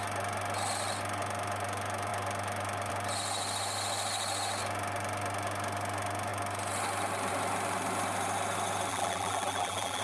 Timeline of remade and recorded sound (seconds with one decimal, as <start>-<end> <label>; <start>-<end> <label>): 0.0-8.9 recorded; 8.9-10.0 remade